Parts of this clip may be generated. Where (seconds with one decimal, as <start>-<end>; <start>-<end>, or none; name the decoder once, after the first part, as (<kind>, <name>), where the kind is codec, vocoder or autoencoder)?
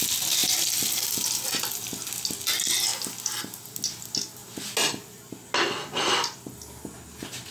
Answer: 0.4-1.0 (vocoder, BigVGAN v2)